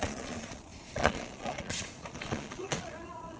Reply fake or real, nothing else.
fake